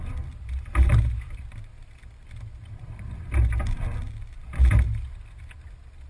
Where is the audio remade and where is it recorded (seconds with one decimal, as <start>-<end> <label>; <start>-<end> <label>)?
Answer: 0.0-1.7 remade; 1.7-5.1 recorded; 5.1-6.1 remade